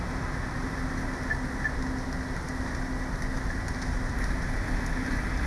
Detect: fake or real real